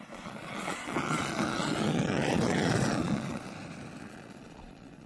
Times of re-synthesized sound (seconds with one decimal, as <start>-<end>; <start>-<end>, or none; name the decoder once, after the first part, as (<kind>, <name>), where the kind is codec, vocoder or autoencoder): 0.0-3.5 (vocoder, Vocos); 4.0-5.1